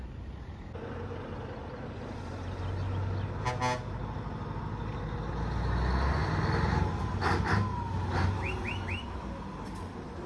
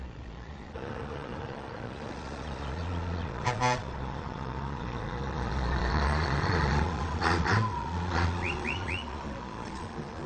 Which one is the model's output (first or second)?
second